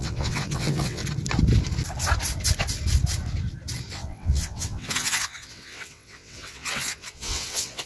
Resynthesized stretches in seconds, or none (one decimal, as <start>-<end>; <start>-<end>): 0.0-1.0; 3.9-7.9